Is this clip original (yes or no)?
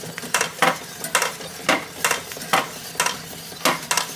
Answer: yes